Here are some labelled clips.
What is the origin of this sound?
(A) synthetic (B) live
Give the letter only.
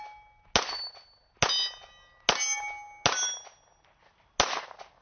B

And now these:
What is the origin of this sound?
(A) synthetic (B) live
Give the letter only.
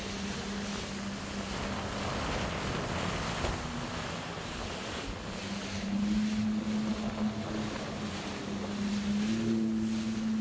B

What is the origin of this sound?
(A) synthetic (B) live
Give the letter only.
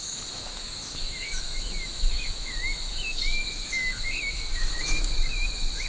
A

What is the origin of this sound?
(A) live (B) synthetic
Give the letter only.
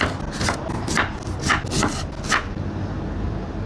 A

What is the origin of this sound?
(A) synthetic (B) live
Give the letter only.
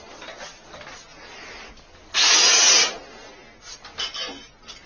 B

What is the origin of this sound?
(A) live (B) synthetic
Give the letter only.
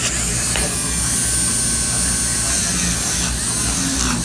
A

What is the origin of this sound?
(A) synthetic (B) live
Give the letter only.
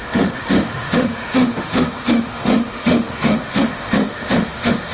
A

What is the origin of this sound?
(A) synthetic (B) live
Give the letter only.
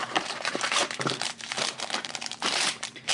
A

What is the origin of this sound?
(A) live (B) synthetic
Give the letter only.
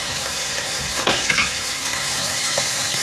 B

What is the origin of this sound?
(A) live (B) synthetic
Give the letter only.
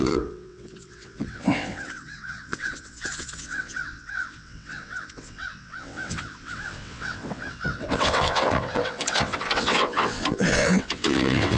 B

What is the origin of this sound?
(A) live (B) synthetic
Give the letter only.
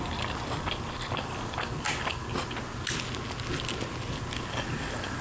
A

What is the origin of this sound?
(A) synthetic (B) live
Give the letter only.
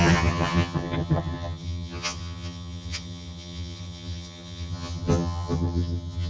A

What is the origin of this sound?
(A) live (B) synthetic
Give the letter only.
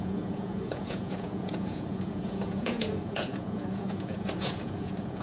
B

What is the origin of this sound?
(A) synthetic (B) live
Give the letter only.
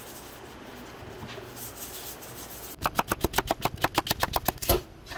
B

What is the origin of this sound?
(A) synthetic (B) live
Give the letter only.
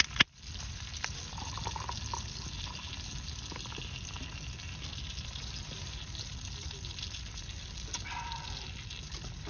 B